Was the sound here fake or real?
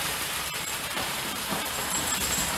fake